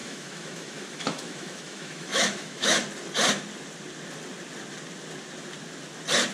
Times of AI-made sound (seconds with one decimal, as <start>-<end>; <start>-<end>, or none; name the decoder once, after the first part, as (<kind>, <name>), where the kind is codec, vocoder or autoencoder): 0.0-2.8 (autoencoder, DAC-VAE)